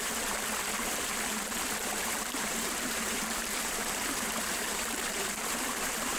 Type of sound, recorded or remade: remade